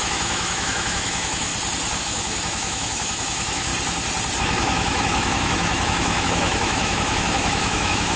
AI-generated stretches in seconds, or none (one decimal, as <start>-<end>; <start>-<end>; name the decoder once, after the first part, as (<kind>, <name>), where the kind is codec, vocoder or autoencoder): 0.0-1.5 (autoencoder, DAC-VAE); 2.0-3.7; 4.4-8.2